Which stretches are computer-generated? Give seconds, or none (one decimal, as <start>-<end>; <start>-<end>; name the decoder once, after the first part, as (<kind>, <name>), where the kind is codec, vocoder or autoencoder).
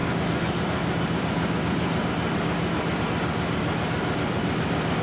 none